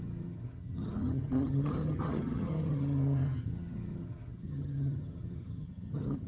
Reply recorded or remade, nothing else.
remade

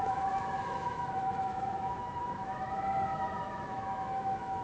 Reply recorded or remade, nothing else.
remade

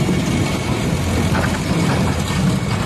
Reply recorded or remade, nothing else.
recorded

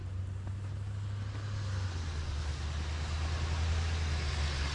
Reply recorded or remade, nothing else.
recorded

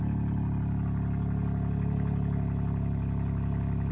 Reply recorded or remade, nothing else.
recorded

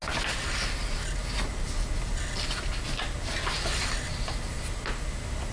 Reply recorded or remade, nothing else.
recorded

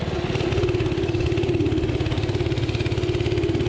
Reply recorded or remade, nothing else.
recorded